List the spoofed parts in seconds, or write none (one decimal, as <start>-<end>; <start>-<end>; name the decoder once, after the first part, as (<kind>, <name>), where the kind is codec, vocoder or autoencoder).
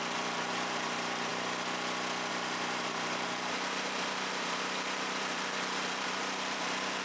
0.0-1.3 (vocoder, BigVGAN v2); 2.3-7.0